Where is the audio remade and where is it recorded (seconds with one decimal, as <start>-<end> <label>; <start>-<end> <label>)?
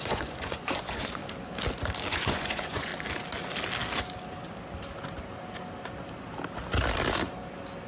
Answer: 0.0-1.2 remade; 1.2-2.1 recorded; 2.1-2.9 remade; 2.9-7.9 recorded